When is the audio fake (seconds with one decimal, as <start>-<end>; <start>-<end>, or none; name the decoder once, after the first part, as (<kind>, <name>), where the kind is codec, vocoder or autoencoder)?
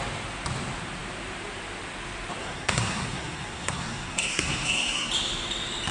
2.4-5.1 (codec, SNAC)